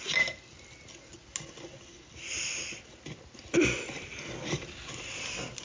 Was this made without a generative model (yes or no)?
yes